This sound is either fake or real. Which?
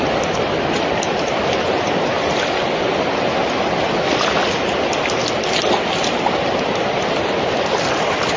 real